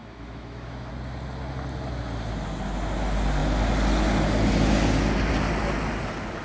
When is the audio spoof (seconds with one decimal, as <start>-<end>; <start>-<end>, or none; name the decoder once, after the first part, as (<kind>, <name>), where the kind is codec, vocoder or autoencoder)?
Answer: 0.0-0.9 (autoencoder, DAC-VAE)